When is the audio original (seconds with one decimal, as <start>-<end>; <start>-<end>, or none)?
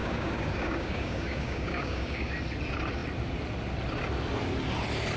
2.3-5.2